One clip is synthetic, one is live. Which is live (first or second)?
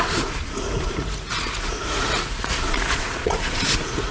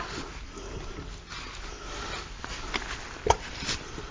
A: second